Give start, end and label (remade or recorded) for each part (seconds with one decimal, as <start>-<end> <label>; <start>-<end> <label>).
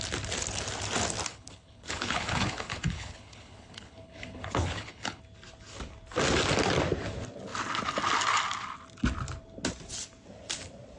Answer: 0.0-1.3 recorded; 1.3-5.2 remade; 5.2-11.0 recorded